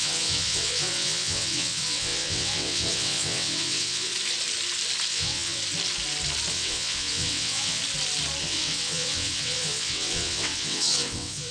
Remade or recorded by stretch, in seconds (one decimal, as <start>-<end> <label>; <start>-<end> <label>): 0.0-4.1 remade; 4.1-5.1 recorded; 5.1-5.6 remade; 5.6-6.5 recorded; 6.5-7.8 remade; 7.8-8.4 recorded; 8.4-11.5 remade